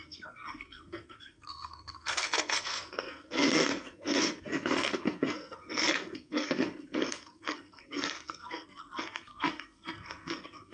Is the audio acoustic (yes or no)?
no